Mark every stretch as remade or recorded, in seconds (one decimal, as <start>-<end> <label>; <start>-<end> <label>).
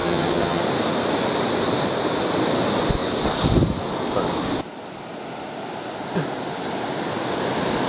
0.0-0.6 remade; 0.6-7.9 recorded